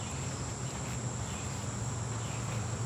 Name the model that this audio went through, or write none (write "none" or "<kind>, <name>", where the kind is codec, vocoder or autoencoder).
none